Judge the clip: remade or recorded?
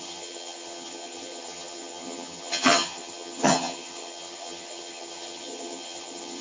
remade